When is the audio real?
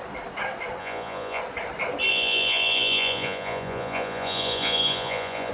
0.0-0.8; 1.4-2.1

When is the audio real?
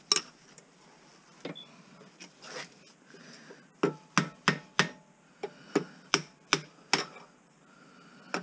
0.0-8.4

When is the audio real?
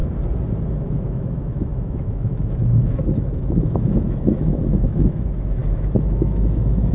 0.0-0.7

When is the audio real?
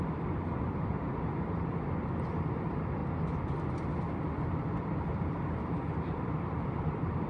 3.0-5.0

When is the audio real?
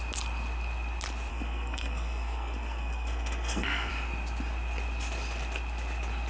0.0-1.3; 3.9-6.3